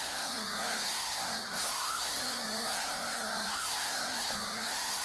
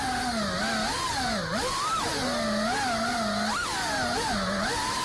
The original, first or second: second